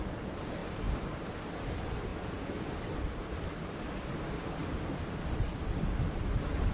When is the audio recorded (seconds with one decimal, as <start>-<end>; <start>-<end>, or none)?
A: 0.0-6.7